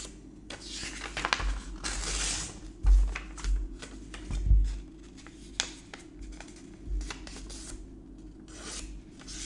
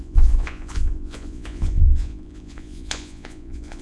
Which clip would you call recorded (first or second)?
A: first